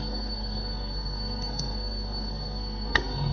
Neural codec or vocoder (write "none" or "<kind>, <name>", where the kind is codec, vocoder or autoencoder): codec, SNAC